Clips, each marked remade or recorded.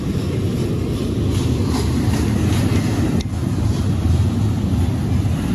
recorded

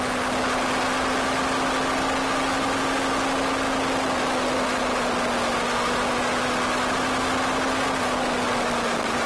recorded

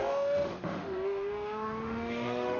remade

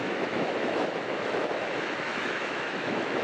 remade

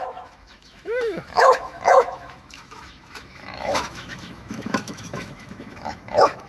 remade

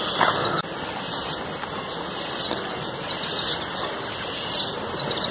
recorded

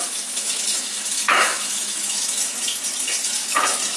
remade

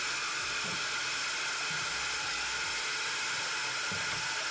recorded